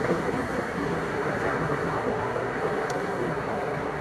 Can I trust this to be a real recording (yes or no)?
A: no